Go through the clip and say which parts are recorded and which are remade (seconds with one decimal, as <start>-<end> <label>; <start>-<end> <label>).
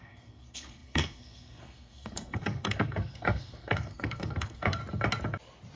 0.0-4.8 remade; 4.8-5.8 recorded